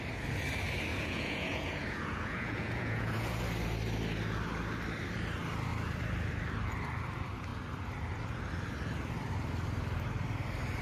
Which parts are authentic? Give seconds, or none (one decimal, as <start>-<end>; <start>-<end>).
0.0-0.9; 3.4-10.8